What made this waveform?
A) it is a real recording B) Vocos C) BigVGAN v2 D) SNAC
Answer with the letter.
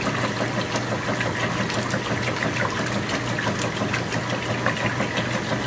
A